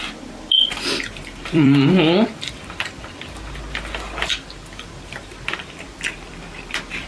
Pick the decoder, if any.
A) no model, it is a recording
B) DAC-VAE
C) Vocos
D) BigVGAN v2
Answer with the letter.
D